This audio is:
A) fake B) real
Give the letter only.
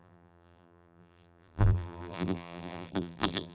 A